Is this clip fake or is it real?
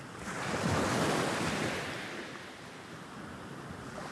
real